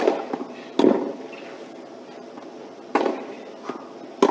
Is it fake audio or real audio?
real